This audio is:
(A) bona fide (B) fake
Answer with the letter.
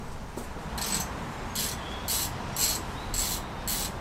A